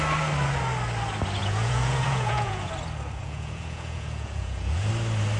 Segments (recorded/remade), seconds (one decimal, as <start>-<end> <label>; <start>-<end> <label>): 0.0-1.4 recorded; 1.4-2.7 remade; 2.7-3.2 recorded; 3.2-4.9 remade; 4.9-5.4 recorded